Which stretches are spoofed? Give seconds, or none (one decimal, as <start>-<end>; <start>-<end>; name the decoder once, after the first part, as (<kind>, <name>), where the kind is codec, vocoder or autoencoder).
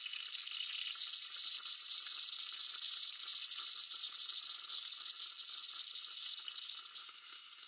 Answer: 7.0-7.7 (codec, SNAC)